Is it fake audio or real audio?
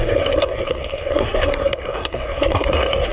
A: fake